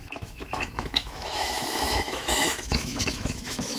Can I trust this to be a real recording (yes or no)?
no